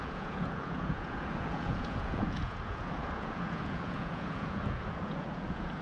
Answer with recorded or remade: remade